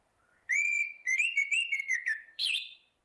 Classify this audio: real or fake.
fake